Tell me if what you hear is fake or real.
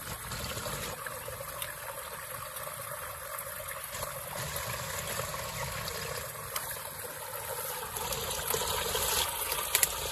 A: real